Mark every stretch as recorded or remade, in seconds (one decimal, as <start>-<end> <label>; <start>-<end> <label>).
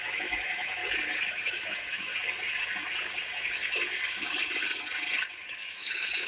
0.0-0.8 remade; 0.8-1.3 recorded; 1.3-2.1 remade; 2.1-5.3 recorded; 5.3-6.3 remade